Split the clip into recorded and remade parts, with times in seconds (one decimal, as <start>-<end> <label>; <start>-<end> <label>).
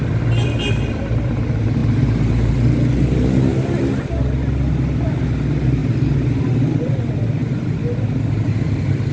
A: 0.0-9.1 recorded